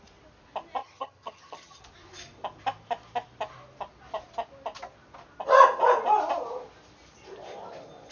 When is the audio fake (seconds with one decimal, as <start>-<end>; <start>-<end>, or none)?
0.8-1.8